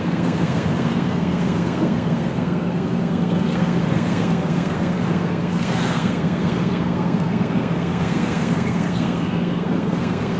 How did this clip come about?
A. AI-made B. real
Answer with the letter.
A